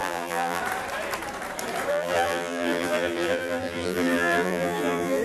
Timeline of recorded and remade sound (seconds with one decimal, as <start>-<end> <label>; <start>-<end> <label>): 0.0-0.6 remade; 0.6-1.9 recorded; 1.9-5.2 remade